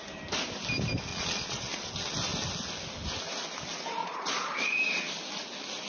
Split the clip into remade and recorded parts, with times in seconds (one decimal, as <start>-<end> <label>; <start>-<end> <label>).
0.0-1.1 recorded; 1.1-1.9 remade; 1.9-4.0 recorded; 4.0-5.1 remade; 5.1-5.9 recorded